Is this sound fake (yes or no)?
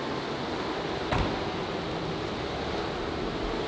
no